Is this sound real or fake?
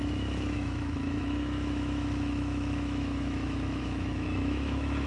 fake